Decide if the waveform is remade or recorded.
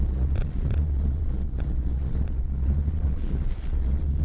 remade